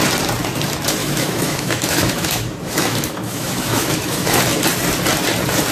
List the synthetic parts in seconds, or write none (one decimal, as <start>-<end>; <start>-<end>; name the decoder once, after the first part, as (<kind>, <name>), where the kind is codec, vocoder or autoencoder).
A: 1.0-4.4 (autoencoder, DAC-VAE)